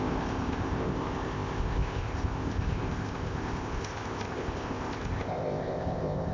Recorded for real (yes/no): no